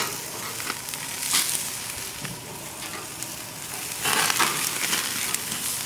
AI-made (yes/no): no